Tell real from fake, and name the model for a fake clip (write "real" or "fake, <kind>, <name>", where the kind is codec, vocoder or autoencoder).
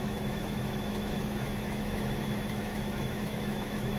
fake, autoencoder, DAC-VAE